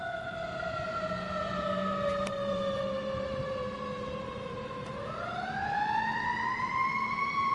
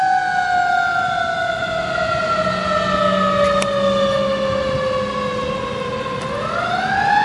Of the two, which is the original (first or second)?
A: second